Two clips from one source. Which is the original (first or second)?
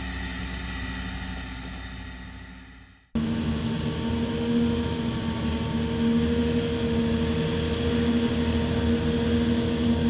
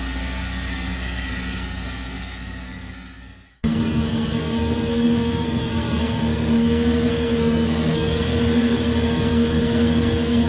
first